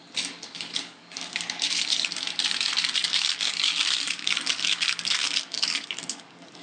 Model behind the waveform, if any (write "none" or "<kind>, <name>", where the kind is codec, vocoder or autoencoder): codec, DAC